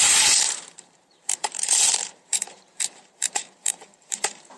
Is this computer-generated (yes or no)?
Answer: yes